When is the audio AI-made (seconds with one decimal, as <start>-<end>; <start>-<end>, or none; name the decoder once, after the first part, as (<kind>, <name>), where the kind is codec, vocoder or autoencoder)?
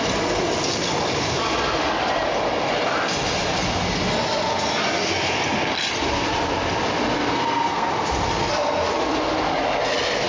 7.3-7.9 (codec, SNAC)